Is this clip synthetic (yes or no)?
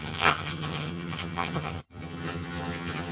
yes